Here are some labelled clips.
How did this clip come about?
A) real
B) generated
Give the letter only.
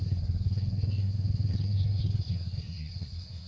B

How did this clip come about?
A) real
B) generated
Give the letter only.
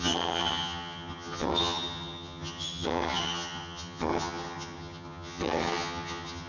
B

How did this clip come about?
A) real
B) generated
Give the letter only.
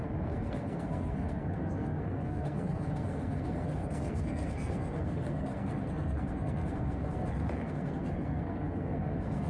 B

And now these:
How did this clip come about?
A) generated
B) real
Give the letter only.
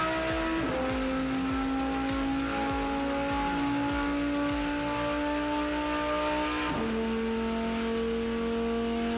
B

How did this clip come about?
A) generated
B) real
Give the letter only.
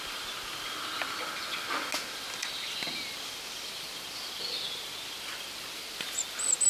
B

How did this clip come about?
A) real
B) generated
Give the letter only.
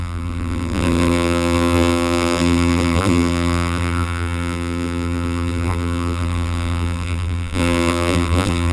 B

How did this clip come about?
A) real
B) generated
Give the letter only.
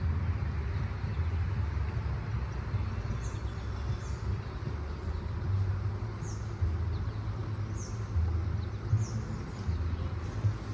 A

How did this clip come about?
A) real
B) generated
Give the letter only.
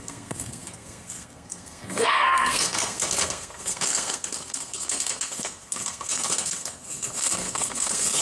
B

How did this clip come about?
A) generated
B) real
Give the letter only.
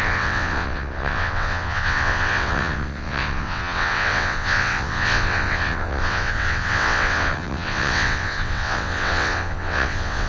A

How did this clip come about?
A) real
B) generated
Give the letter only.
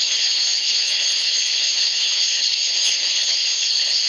B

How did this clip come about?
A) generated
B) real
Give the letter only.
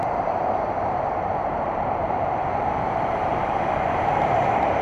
A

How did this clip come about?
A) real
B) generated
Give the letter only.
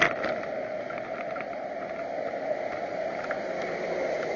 A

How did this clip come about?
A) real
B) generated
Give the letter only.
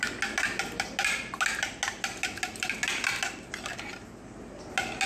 A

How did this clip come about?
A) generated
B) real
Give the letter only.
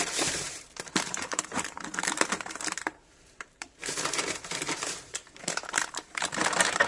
A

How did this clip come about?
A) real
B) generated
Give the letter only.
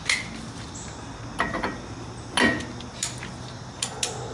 A